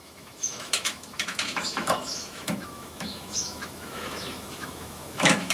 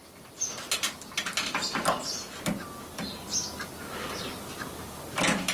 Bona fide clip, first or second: second